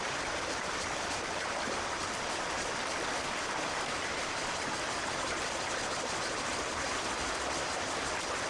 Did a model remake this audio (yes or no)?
yes